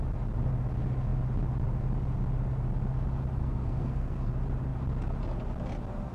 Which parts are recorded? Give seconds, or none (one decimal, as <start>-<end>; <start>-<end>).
0.0-3.4; 4.3-6.1